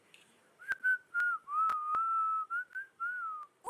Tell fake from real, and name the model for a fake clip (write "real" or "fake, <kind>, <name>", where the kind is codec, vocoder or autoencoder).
real